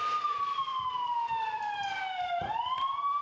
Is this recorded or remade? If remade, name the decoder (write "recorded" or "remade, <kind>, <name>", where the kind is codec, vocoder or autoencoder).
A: recorded